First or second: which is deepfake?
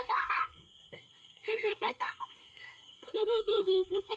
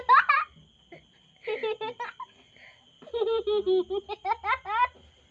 first